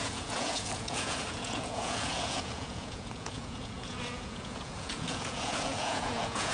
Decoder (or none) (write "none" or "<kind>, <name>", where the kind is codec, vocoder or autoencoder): vocoder, Vocos